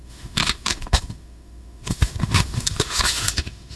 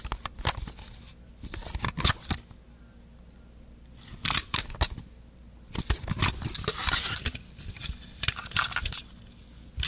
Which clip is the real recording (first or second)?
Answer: second